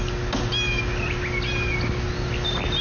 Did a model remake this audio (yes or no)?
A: no